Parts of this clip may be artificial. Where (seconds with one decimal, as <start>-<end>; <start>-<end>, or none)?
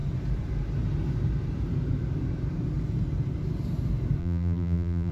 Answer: 4.2-5.1